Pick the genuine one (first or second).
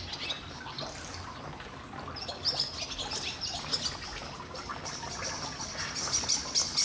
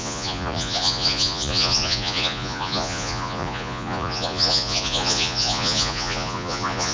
first